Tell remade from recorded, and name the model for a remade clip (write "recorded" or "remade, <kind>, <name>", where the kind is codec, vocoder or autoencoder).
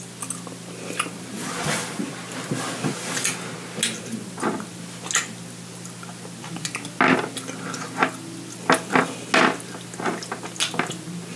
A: recorded